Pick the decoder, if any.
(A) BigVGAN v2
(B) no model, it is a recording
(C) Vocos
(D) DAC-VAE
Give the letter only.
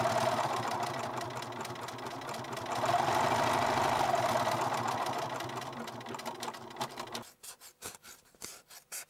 B